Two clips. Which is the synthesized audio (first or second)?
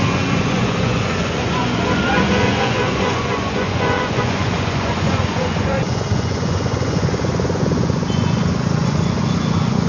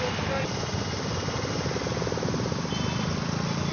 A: first